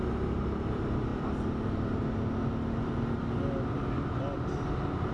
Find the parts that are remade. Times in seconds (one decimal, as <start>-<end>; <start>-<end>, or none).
none